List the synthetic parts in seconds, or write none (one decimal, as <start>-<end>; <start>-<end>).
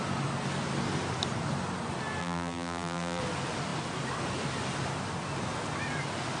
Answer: 2.2-3.2